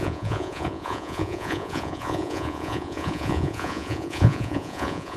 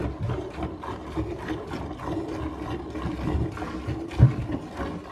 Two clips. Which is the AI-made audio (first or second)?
first